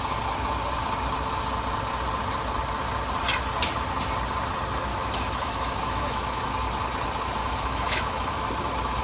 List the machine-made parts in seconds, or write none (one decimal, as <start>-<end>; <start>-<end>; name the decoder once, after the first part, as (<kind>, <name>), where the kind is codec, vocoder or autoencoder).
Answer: 4.9-6.5 (autoencoder, DAC-VAE); 7.4-8.4